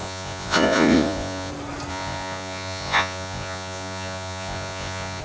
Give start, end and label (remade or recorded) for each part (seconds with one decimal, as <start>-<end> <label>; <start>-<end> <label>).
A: 0.0-1.5 remade; 1.5-1.9 recorded; 1.9-5.2 remade